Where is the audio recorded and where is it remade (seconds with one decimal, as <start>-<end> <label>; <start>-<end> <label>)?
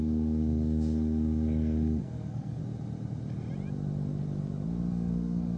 0.0-2.6 remade; 2.6-4.9 recorded; 4.9-5.6 remade